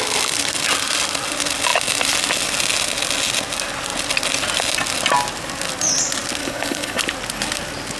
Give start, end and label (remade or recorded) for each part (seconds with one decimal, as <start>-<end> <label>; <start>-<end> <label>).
0.0-6.4 recorded; 6.4-7.0 remade; 7.0-8.0 recorded